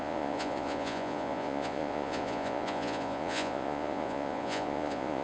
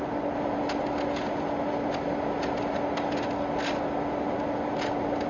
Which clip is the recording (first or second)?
second